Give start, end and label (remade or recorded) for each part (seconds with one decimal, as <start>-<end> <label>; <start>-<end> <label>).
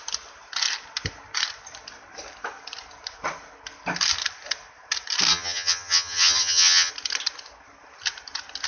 0.0-5.3 recorded; 5.3-6.9 remade; 6.9-8.7 recorded